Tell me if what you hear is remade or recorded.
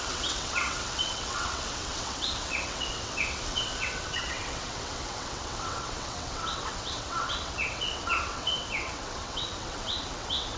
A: remade